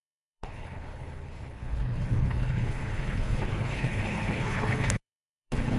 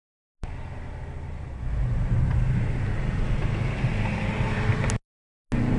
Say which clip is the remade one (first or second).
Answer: first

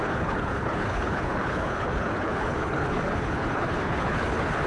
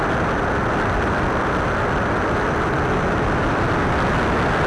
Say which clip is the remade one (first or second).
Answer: first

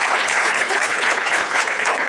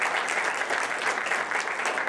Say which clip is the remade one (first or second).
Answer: first